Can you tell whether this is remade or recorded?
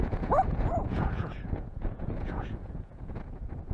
remade